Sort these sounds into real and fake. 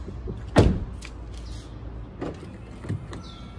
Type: real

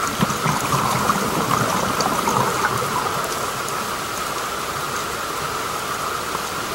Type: real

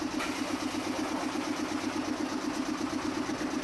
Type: real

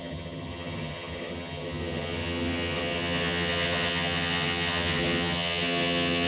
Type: fake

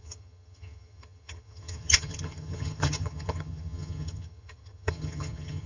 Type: fake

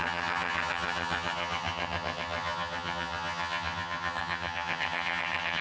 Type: fake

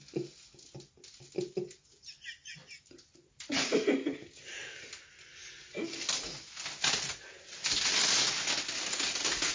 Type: real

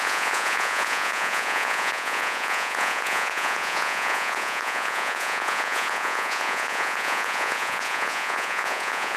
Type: fake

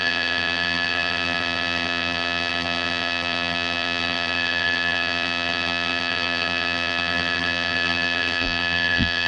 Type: fake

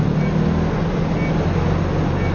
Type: real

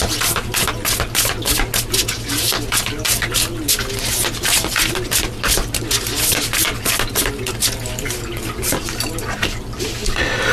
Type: real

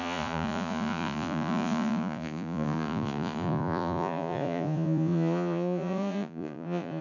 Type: fake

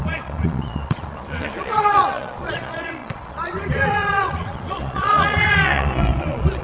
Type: fake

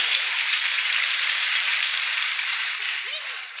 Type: fake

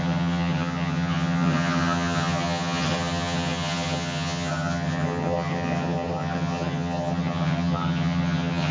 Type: fake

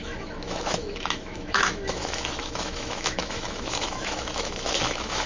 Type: fake